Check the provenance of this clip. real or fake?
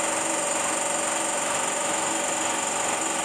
real